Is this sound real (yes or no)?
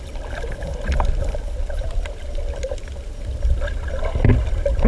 yes